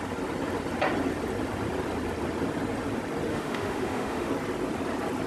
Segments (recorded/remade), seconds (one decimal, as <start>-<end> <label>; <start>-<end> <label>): 0.0-3.3 recorded; 3.3-4.3 remade; 4.3-5.3 recorded